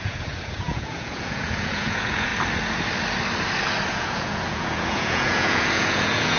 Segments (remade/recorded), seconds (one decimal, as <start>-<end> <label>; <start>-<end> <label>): 0.0-2.3 remade; 2.3-3.9 recorded; 3.9-6.4 remade